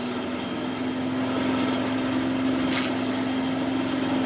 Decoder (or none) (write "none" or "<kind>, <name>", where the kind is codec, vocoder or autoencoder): none